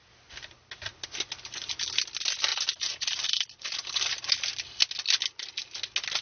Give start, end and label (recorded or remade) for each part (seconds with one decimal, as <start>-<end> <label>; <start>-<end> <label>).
0.0-2.5 recorded; 2.5-4.8 remade; 4.8-6.2 recorded